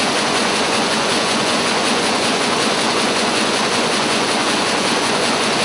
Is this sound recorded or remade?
remade